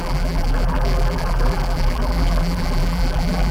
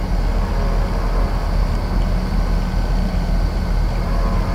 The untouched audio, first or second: second